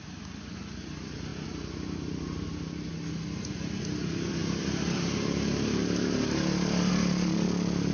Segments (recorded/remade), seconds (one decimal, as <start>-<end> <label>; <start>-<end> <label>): 0.0-7.9 recorded